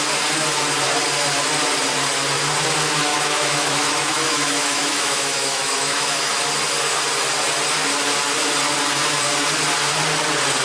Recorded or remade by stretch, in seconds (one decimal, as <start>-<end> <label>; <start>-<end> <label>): 0.0-3.1 recorded; 3.1-6.4 remade; 6.4-10.6 recorded